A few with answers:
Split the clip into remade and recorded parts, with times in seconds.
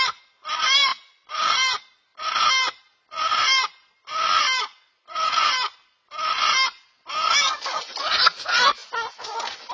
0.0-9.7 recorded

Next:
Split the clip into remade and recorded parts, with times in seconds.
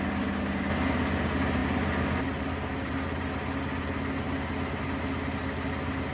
0.0-6.1 recorded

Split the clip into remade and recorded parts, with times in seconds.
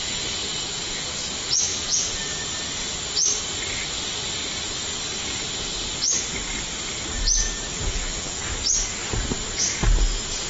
0.0-1.7 recorded; 1.7-2.4 remade; 2.4-7.7 recorded; 7.7-8.4 remade; 8.4-10.5 recorded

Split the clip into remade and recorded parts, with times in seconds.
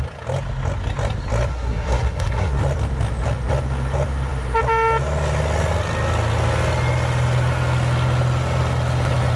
0.0-1.5 recorded; 1.5-2.6 remade; 2.6-9.4 recorded